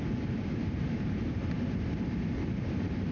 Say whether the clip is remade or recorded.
remade